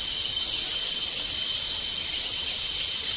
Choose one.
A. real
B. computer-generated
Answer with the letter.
A